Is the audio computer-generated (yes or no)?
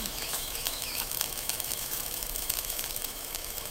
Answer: yes